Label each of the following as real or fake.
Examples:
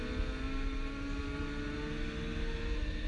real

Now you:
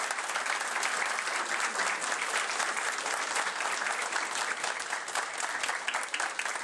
real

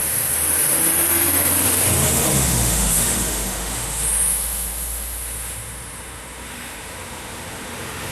fake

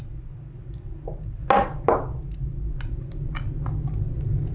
real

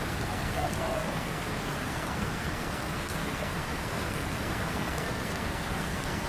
fake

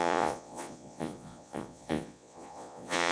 fake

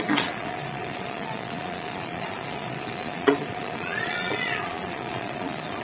fake